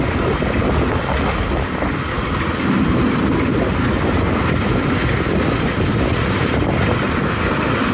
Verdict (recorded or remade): recorded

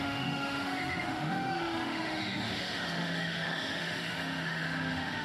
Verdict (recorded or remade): remade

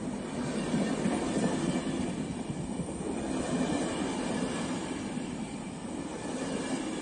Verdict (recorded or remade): recorded